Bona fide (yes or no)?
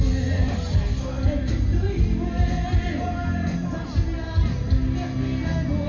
yes